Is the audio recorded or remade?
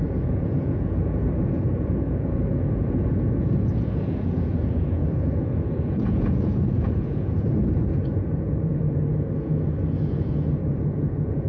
remade